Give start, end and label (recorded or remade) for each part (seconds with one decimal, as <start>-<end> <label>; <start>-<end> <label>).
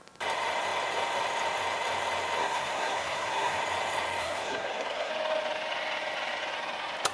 0.0-2.4 recorded; 2.4-3.6 remade; 3.6-4.2 recorded; 4.2-5.1 remade; 5.1-7.1 recorded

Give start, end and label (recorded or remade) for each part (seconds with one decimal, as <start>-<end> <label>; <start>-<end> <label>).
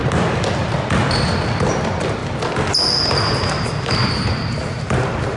0.0-1.7 recorded; 1.7-2.2 remade; 2.2-3.0 recorded; 3.0-5.4 remade